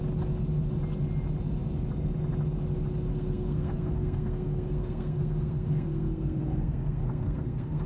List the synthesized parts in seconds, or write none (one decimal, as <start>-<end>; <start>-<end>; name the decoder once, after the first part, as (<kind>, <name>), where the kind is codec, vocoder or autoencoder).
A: 3.1-7.9 (codec, SNAC)